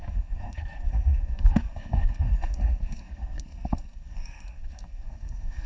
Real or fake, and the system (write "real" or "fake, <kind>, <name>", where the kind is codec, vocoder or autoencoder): fake, codec, SNAC